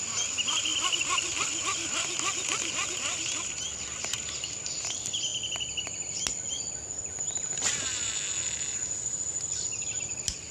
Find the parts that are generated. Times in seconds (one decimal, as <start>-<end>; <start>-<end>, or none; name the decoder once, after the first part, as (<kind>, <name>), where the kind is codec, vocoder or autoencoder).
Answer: none